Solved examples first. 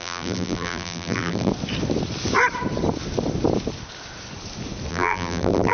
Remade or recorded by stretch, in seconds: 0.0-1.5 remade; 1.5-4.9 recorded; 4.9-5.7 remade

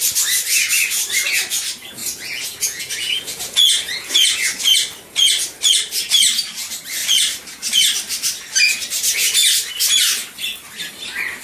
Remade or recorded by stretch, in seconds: 0.0-2.0 recorded; 2.0-4.6 remade; 4.6-11.4 recorded

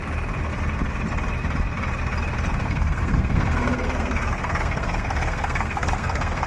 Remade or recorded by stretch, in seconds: 0.0-2.6 recorded; 2.6-6.5 remade

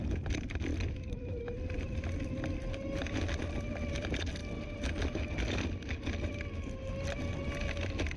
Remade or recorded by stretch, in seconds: 0.0-0.7 recorded; 0.7-1.4 remade; 1.4-8.2 recorded

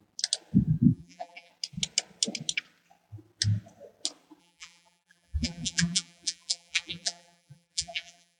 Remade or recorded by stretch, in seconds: 0.0-0.9 recorded; 0.9-1.5 remade; 1.5-4.4 recorded; 4.4-8.4 remade

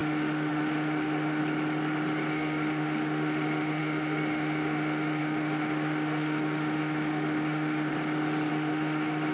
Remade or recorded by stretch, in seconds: 0.0-1.4 remade; 1.4-2.3 recorded; 2.3-7.9 remade; 7.9-8.5 recorded; 8.5-9.3 remade

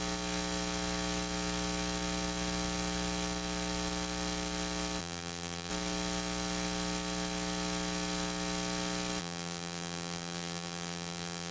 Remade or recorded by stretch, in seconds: 0.0-5.0 recorded; 5.0-5.7 remade; 5.7-9.2 recorded; 9.2-11.5 remade

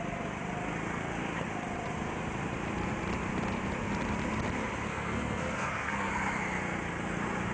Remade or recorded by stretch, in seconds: 0.0-4.9 recorded; 4.9-6.1 remade; 6.1-7.5 recorded